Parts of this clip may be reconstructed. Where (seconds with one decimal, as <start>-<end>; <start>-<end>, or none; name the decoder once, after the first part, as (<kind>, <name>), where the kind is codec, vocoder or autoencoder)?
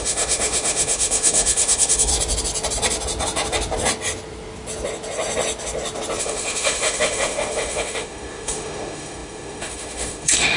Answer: 0.0-2.1 (autoencoder, DAC-VAE); 6.2-10.6